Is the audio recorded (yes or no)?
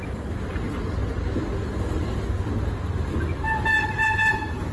yes